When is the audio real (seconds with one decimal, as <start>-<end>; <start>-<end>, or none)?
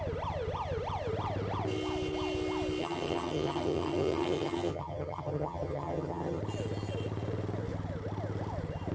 0.0-2.8; 6.4-8.9